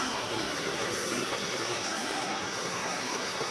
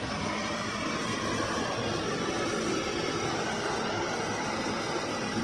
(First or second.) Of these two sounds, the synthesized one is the first